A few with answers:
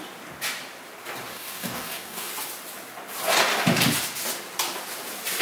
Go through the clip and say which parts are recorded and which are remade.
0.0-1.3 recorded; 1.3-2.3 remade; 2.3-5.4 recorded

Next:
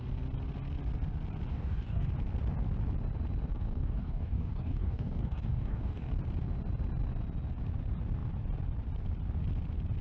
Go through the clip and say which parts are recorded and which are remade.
0.0-1.5 recorded; 1.5-2.1 remade; 2.1-3.5 recorded; 3.5-6.1 remade; 6.1-10.0 recorded

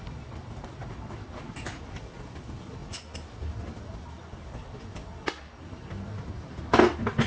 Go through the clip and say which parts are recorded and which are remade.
0.0-7.3 recorded

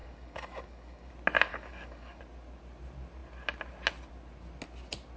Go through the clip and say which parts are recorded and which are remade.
0.0-1.1 remade; 1.1-1.5 recorded; 1.5-2.2 remade; 2.2-5.2 recorded

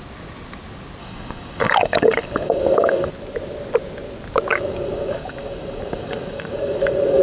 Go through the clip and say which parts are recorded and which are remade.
0.0-1.0 recorded; 1.0-3.1 remade; 3.1-4.5 recorded; 4.5-7.2 remade

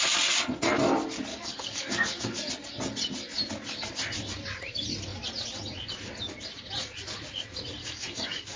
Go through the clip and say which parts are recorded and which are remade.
0.0-1.3 recorded; 1.3-2.5 remade; 2.5-7.8 recorded; 7.8-8.6 remade